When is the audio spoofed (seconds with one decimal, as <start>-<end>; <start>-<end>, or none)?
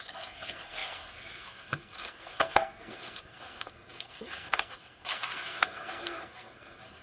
0.0-7.0